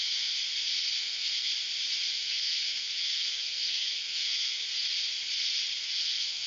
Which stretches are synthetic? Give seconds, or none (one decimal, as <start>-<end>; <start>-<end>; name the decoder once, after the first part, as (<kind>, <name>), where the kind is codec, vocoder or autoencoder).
0.0-0.4 (codec, SNAC); 1.0-1.5; 2.1-4.6; 5.8-6.5